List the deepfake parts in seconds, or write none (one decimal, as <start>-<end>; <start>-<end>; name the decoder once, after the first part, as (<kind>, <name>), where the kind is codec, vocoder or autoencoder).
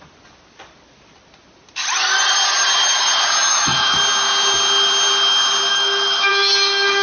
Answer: 3.4-4.0 (autoencoder, DAC-VAE); 5.7-6.3